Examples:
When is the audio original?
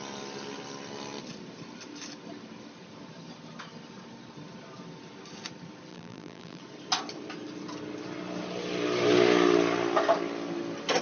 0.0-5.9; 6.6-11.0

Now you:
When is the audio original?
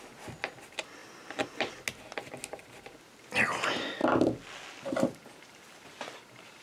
0.0-1.0; 1.7-6.6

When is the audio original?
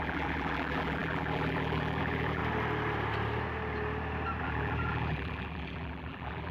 2.4-4.4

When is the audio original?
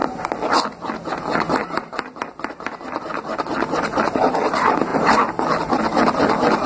0.0-6.7